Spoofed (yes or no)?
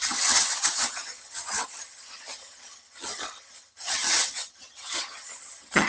yes